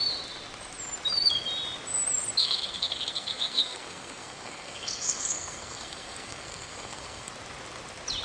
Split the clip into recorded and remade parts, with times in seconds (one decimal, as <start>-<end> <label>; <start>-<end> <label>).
0.0-2.4 recorded; 2.4-7.3 remade; 7.3-8.2 recorded